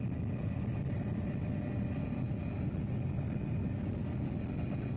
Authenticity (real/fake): real